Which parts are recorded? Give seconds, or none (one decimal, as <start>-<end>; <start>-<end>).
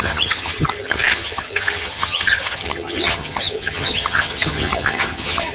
none